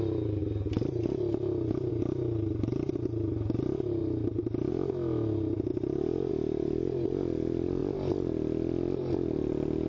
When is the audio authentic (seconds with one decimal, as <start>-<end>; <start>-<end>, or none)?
0.0-9.9